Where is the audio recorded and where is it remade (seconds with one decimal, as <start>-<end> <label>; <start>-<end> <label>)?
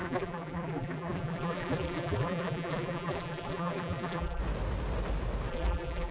0.0-4.4 remade; 4.4-5.5 recorded; 5.5-6.1 remade